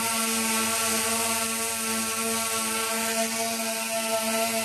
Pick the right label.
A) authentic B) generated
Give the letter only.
A